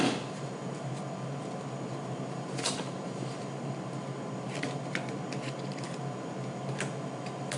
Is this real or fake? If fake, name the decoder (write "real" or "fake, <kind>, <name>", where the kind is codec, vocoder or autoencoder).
real